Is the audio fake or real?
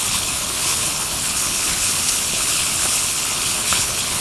fake